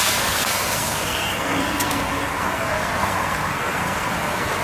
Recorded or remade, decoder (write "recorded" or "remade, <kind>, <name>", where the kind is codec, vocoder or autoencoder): remade, codec, SNAC